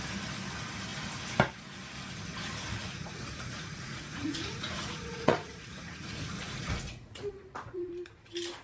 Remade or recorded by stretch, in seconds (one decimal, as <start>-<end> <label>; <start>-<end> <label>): 0.0-2.8 recorded; 2.8-7.9 remade; 7.9-8.6 recorded